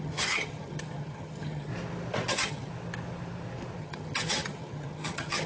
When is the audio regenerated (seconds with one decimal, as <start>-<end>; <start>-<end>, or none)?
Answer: 0.0-1.7; 2.3-2.7; 3.8-5.5